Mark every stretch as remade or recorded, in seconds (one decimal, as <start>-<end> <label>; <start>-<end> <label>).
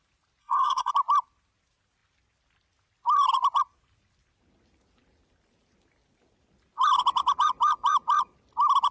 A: 0.0-0.4 recorded; 0.4-0.9 remade; 0.9-8.9 recorded